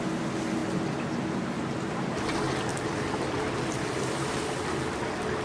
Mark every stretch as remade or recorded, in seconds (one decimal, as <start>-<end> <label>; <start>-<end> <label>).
0.0-2.7 recorded; 2.7-4.4 remade; 4.4-5.4 recorded